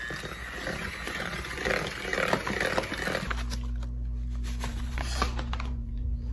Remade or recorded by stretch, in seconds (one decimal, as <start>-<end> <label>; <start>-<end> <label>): 0.0-0.4 recorded; 0.4-1.7 remade; 1.7-4.7 recorded; 4.7-6.3 remade